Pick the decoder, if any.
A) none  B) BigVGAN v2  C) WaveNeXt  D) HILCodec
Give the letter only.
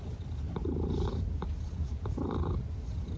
A